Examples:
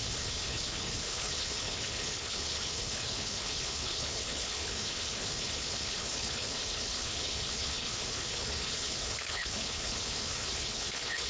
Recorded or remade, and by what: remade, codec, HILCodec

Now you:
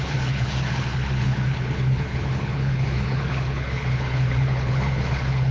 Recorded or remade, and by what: remade, codec, HILCodec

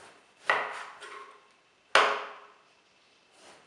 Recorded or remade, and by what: recorded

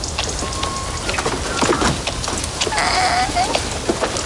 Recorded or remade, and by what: recorded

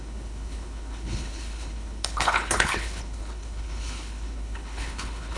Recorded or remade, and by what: remade, codec, HILCodec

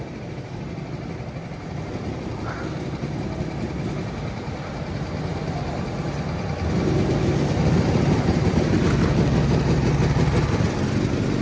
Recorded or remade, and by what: recorded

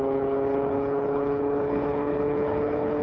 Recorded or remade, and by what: remade, codec, HILCodec